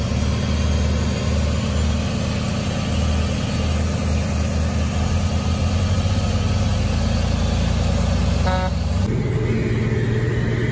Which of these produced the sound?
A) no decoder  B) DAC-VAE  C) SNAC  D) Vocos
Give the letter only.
A